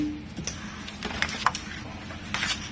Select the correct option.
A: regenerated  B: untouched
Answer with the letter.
B